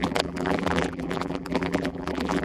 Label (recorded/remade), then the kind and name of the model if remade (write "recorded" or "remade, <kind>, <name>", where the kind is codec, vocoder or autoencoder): remade, vocoder, BigVGAN v2